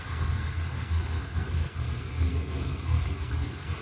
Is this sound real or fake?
fake